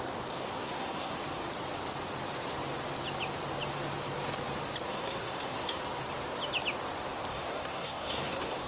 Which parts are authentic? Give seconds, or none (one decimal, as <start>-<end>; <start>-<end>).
0.0-0.6; 1.2-4.9; 5.8-7.3